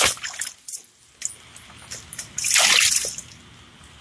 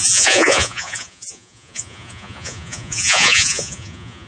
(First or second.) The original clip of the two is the first